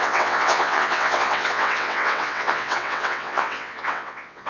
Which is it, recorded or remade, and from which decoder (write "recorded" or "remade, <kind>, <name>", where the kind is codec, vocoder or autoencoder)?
remade, vocoder, WaveNeXt